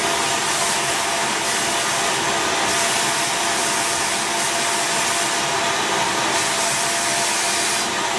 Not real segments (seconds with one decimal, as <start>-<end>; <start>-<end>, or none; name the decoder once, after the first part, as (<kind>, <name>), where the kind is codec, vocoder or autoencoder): none